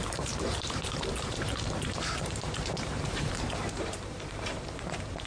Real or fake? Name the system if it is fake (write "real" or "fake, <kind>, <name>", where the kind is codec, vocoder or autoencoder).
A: fake, vocoder, BigVGAN v2